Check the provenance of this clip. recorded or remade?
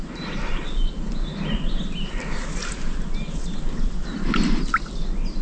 recorded